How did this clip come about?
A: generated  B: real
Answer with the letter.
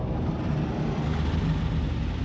B